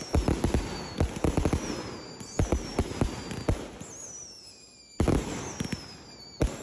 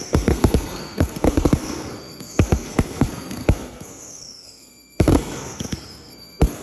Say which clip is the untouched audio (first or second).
first